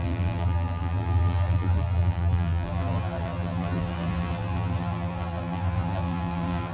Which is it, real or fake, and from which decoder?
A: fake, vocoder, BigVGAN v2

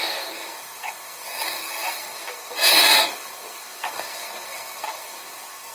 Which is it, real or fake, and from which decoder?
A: fake, codec, SNAC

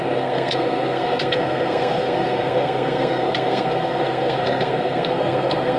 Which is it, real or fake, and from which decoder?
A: fake, codec, SNAC